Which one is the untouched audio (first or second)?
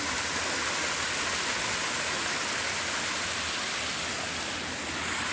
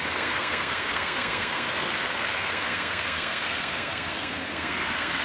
first